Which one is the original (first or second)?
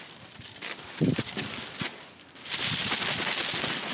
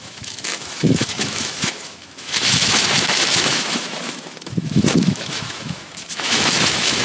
first